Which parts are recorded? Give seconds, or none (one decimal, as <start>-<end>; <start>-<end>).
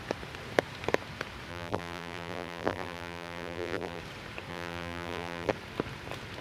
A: 0.0-1.5; 4.0-4.5; 5.5-6.4